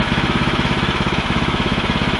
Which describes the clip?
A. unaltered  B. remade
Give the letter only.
B